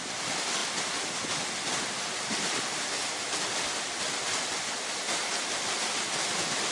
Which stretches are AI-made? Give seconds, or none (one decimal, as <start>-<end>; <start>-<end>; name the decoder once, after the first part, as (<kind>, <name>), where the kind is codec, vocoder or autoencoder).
none